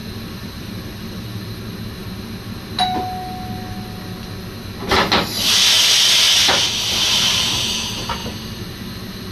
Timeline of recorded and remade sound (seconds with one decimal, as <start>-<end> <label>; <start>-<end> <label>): 0.0-1.5 remade; 1.5-8.2 recorded; 8.2-9.3 remade